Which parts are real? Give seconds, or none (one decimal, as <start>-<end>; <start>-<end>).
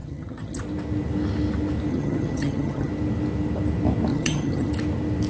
0.6-1.9; 2.9-4.1; 4.7-5.3